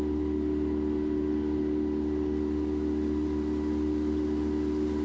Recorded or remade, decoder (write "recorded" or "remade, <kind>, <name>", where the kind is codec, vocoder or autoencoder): recorded